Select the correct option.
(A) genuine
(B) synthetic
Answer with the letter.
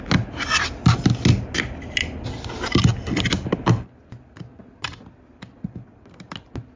A